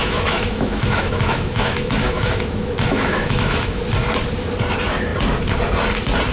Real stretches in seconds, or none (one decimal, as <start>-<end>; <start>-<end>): 3.8-6.3